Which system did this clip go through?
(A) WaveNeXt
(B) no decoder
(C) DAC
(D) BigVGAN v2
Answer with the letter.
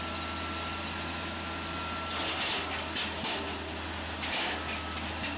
B